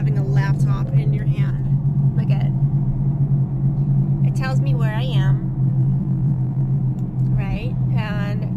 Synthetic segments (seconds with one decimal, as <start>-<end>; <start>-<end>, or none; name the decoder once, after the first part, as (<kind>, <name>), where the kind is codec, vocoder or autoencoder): 5.7-6.8 (vocoder, BigVGAN v2)